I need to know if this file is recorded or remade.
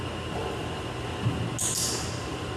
recorded